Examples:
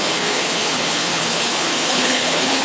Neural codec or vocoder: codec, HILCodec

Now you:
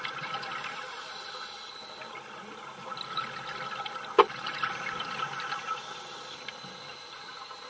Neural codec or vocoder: none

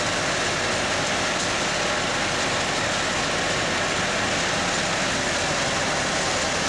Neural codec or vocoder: none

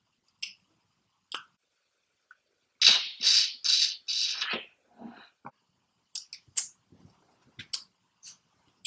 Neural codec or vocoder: none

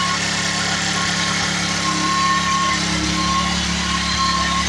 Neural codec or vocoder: none